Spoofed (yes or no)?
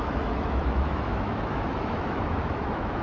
yes